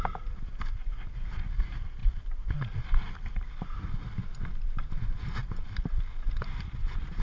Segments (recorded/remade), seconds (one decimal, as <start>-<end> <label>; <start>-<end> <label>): 0.0-7.2 recorded